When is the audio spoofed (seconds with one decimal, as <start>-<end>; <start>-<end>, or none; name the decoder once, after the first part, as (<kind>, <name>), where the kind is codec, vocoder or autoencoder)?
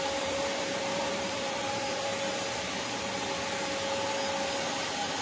0.0-2.1 (vocoder, BigVGAN v2)